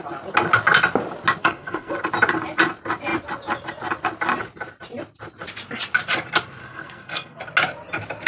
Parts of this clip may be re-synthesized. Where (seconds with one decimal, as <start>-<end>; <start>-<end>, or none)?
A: 1.4-1.9; 6.6-7.4